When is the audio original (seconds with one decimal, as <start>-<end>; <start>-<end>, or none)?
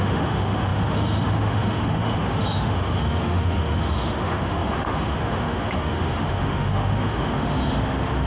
none